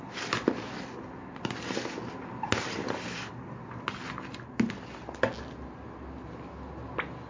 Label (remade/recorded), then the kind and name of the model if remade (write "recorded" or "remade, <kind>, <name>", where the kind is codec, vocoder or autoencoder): recorded